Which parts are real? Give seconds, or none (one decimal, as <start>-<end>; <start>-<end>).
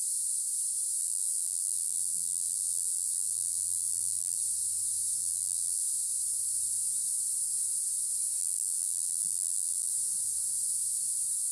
0.0-1.0; 4.4-5.2; 5.8-8.4; 9.9-11.5